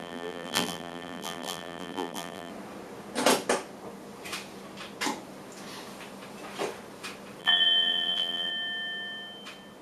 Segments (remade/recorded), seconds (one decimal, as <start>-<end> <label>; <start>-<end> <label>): 0.0-2.5 remade; 2.5-7.4 recorded; 7.4-8.5 remade; 8.5-9.8 recorded